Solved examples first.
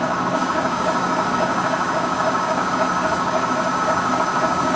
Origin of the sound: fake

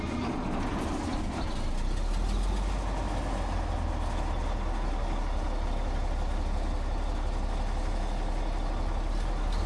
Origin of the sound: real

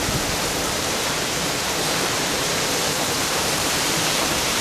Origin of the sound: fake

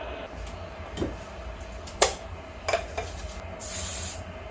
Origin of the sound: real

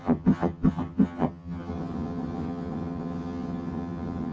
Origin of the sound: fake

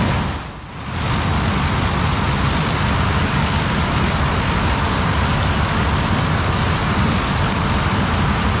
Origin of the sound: real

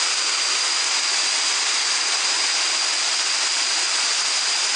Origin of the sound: real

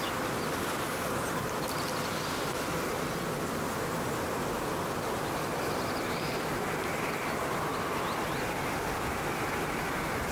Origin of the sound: real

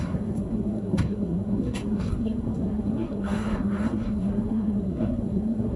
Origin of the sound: fake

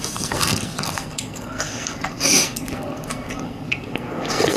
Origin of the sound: fake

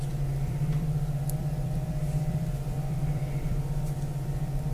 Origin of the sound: fake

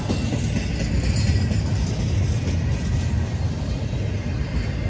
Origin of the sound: real